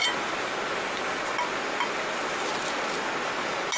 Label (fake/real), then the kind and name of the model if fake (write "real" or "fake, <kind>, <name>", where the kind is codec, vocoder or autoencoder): real